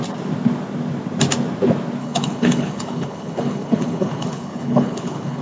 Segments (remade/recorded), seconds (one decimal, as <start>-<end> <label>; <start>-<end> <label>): 0.0-2.0 recorded; 2.0-5.4 remade

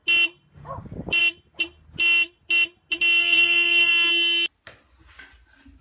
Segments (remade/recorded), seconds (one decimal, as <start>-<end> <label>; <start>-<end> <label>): 0.0-3.2 recorded; 3.2-3.9 remade; 3.9-5.8 recorded